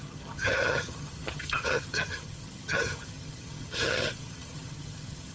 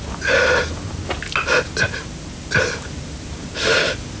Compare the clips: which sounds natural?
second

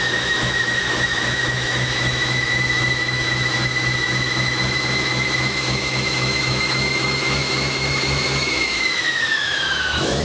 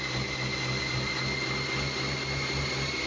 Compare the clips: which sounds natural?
second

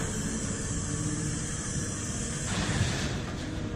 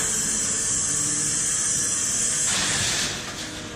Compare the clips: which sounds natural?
second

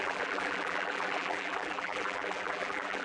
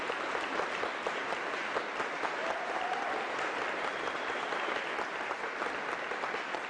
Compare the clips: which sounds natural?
second